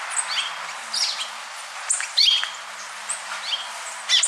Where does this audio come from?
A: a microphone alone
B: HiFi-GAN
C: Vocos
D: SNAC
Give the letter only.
A